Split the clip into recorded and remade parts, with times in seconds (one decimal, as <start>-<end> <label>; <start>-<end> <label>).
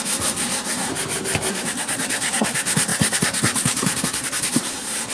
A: 0.0-0.9 remade; 0.9-1.5 recorded; 1.5-5.1 remade